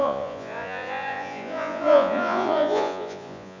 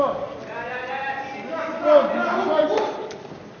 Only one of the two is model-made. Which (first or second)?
first